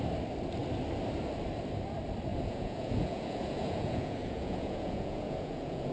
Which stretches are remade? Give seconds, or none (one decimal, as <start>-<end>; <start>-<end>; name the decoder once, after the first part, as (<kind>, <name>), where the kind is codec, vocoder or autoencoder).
2.3-5.9 (vocoder, Vocos)